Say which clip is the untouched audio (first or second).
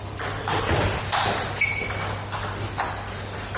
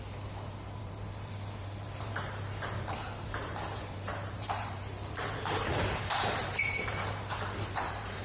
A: first